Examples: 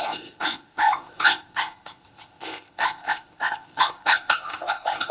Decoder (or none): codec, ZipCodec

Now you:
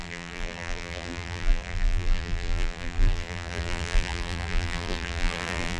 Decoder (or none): vocoder, BigVGAN v2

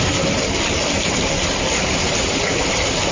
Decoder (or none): none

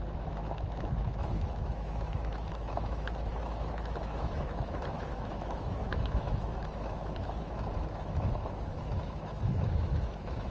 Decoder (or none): autoencoder, DAC-VAE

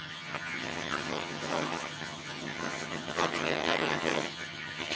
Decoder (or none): vocoder, HiFi-GAN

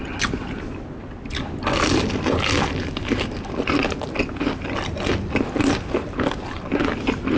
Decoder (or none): none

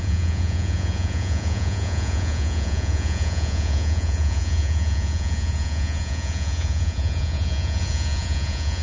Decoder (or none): vocoder, Vocos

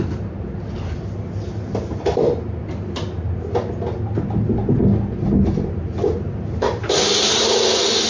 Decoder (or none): none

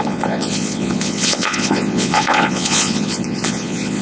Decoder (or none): vocoder, Vocos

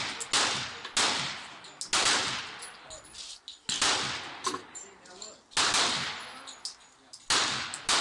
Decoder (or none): none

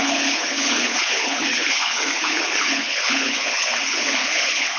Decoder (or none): codec, HILCodec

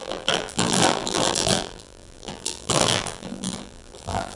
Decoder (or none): vocoder, BigVGAN v2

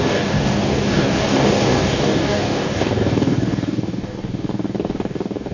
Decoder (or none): codec, DAC